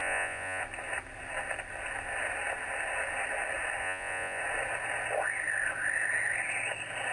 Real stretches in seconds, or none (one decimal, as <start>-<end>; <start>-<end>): 0.6-3.8; 4.4-7.1